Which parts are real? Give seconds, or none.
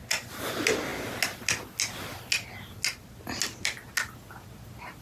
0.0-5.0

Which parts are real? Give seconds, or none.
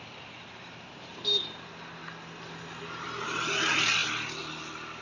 2.0-3.6; 4.0-5.0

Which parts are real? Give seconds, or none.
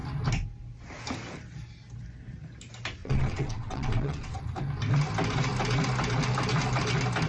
0.0-3.0; 4.4-7.3